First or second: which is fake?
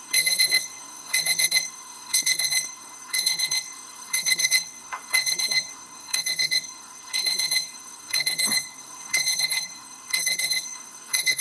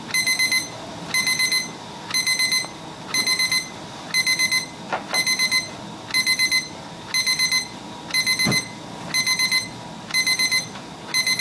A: first